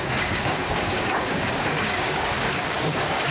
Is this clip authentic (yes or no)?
no